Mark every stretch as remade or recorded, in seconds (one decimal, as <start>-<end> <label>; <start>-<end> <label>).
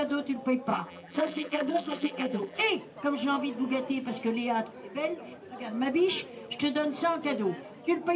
0.0-0.7 recorded; 0.7-2.6 remade; 2.6-8.2 recorded